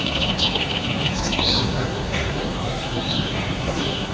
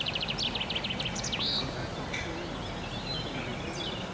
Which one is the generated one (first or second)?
first